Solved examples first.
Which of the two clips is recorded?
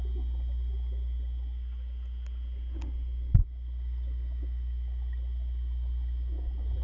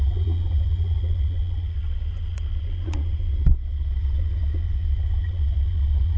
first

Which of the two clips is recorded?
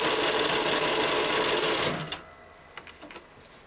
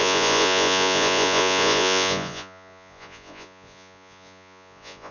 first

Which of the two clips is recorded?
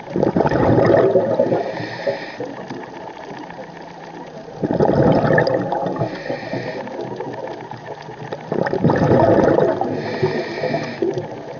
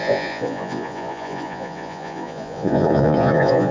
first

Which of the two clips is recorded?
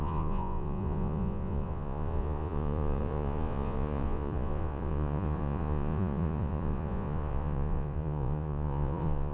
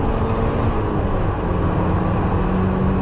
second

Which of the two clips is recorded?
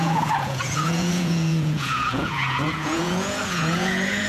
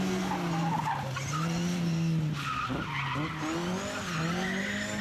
second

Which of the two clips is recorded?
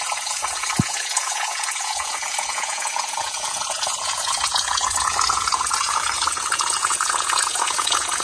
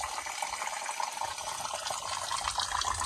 second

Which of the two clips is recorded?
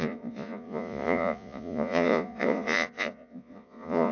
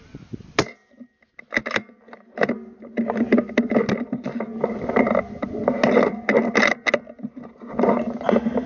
second